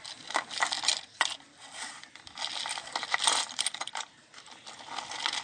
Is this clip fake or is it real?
real